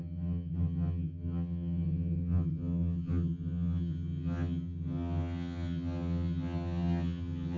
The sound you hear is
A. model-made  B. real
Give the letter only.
A